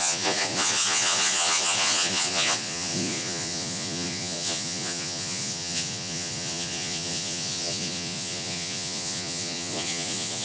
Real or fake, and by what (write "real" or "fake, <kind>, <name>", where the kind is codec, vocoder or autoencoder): fake, vocoder, Vocos